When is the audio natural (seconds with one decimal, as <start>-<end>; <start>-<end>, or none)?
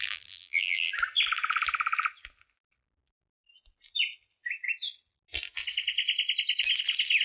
0.9-7.2